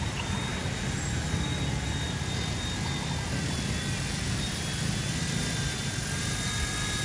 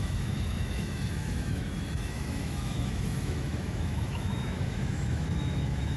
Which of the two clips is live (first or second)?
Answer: first